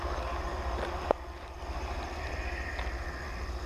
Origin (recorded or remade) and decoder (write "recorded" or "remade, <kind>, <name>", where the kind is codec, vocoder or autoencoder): recorded